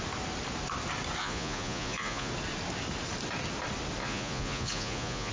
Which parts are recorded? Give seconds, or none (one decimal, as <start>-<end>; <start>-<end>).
0.0-1.2; 2.3-4.0